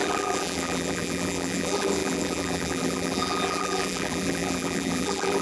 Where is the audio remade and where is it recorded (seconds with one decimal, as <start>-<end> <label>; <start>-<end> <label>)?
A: 0.0-5.4 remade

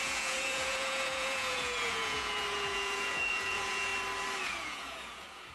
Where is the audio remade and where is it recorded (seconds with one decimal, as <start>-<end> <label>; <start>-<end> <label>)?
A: 0.0-3.9 remade; 3.9-4.4 recorded; 4.4-5.5 remade

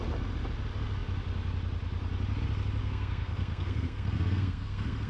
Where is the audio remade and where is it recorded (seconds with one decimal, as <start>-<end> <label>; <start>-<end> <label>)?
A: 0.0-2.8 recorded; 2.8-5.1 remade

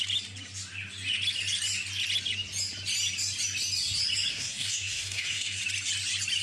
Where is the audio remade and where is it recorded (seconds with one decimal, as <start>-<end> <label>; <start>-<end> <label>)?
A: 0.0-4.3 recorded; 4.3-5.6 remade; 5.6-6.4 recorded

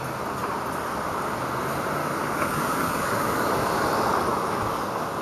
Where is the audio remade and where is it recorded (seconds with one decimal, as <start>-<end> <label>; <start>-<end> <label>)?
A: 0.0-2.0 recorded; 2.0-3.7 remade; 3.7-4.3 recorded; 4.3-5.2 remade

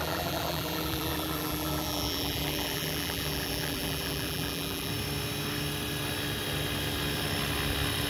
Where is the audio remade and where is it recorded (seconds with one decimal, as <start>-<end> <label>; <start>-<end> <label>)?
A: 0.0-4.9 remade; 4.9-8.1 recorded

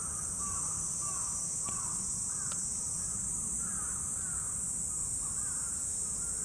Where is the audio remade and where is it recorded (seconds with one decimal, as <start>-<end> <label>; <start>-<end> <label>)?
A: 0.0-6.4 recorded

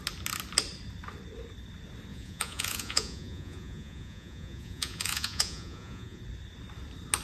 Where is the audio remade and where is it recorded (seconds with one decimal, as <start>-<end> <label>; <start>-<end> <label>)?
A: 0.0-2.1 recorded; 2.1-6.2 remade; 6.2-7.2 recorded